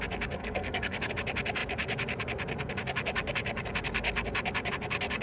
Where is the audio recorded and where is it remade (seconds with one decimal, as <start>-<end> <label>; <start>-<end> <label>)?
0.0-0.4 recorded; 0.4-1.1 remade; 1.1-5.2 recorded